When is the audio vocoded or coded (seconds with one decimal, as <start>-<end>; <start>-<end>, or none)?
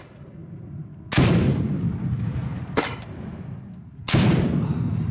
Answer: none